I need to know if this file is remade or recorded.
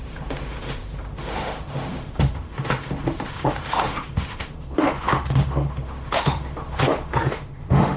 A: remade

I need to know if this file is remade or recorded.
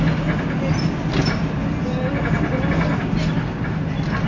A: recorded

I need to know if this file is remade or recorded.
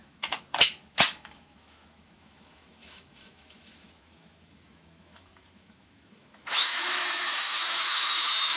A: remade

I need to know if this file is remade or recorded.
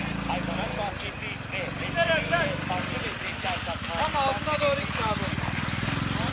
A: recorded